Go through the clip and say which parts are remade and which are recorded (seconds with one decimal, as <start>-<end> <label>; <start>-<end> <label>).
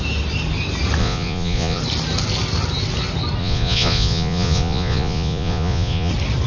0.0-1.0 recorded; 1.0-1.8 remade; 1.8-3.4 recorded; 3.4-6.1 remade; 6.1-6.5 recorded